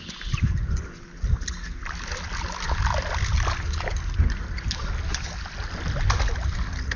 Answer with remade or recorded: recorded